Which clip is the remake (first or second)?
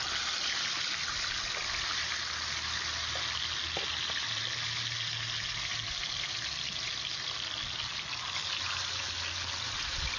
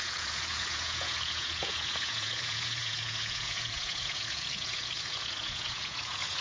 second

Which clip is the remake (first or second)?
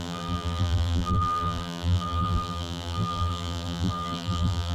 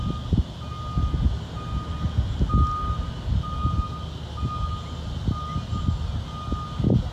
first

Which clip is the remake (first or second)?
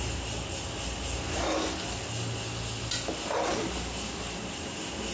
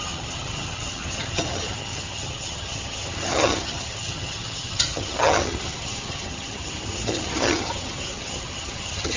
second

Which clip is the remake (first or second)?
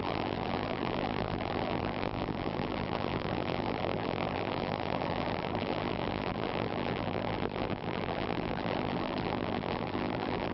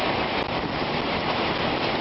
first